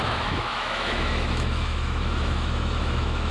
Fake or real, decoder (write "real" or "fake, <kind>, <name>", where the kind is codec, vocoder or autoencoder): fake, autoencoder, DAC-VAE